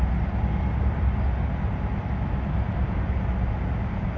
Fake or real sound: real